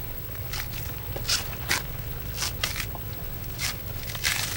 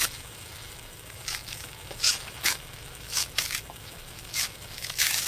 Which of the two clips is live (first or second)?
first